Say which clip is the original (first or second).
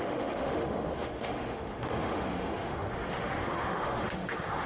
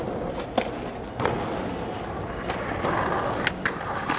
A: second